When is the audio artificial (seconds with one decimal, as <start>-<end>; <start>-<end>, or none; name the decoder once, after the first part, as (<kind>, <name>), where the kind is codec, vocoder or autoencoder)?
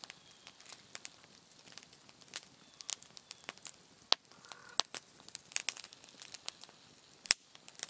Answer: none